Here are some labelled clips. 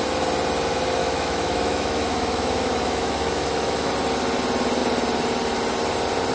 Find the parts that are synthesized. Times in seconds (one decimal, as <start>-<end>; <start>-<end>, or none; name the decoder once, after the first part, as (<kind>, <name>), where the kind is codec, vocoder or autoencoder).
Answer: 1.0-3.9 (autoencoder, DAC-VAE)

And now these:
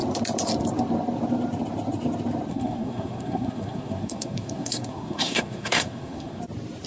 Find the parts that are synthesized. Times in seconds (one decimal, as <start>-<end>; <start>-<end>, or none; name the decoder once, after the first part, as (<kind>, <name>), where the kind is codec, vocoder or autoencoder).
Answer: 2.5-6.4 (codec, SNAC)

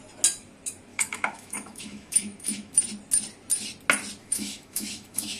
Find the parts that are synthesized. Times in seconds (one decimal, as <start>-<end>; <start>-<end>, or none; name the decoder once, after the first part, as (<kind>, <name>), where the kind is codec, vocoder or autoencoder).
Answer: 0.9-2.8 (autoencoder, DAC-VAE); 4.2-5.4

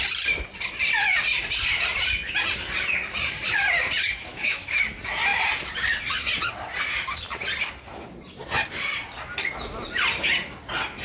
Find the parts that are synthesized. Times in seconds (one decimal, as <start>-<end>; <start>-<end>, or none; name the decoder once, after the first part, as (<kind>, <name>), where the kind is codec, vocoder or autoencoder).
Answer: 4.3-4.8 (autoencoder, DAC-VAE)

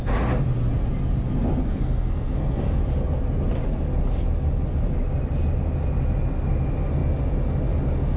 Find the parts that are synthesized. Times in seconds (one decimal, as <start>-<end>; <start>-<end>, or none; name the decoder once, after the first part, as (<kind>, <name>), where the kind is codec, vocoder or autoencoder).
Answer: 1.7-2.8 (codec, SNAC)